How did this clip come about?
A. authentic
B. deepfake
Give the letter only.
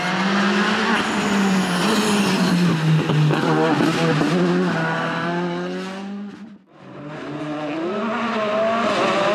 A